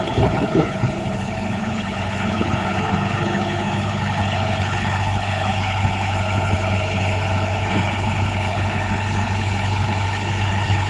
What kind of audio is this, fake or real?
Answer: fake